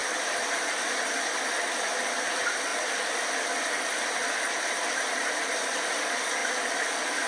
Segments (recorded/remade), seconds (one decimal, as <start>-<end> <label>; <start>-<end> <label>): 0.0-7.3 recorded